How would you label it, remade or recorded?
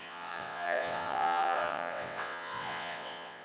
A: remade